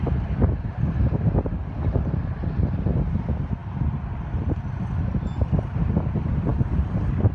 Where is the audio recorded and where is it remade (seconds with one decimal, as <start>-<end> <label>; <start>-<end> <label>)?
0.0-7.3 recorded